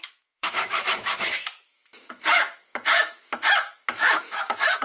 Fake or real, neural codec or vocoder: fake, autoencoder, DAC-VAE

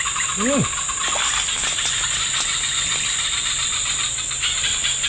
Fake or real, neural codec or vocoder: real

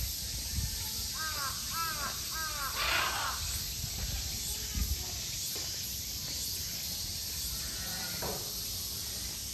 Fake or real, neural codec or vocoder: real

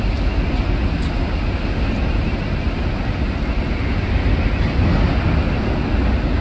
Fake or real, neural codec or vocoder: real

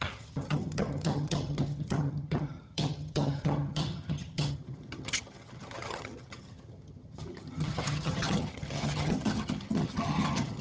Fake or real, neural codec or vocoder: fake, vocoder, HiFi-GAN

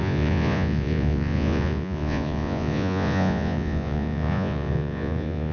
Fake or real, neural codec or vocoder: fake, vocoder, Vocos